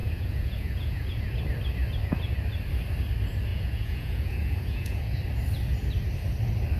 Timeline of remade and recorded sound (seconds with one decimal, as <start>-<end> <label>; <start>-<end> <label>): 0.0-1.4 remade; 1.4-3.5 recorded; 3.5-5.2 remade; 5.2-6.8 recorded